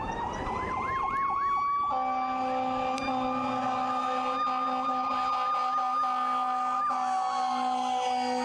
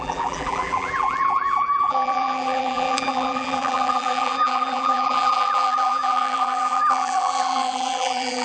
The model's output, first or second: second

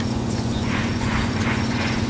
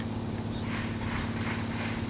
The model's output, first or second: first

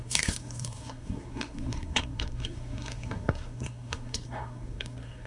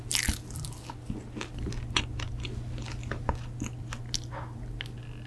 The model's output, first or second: first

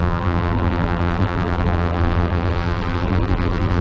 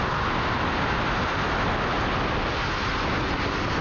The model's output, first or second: first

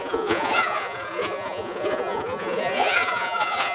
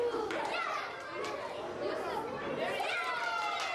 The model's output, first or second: first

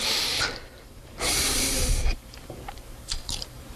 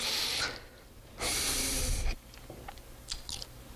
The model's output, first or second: first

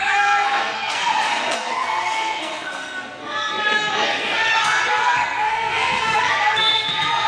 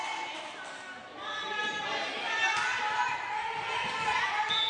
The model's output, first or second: first